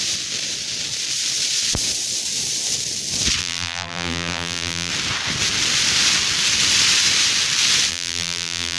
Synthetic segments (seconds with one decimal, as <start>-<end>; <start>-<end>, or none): 3.4-4.9; 7.9-8.8